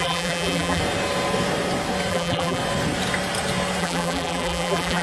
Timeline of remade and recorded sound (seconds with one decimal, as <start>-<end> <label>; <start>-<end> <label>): 0.0-0.8 remade; 0.8-2.1 recorded; 2.1-2.6 remade; 2.6-3.8 recorded; 3.8-5.0 remade